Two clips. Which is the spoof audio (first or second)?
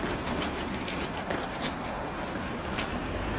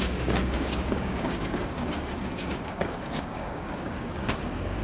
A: second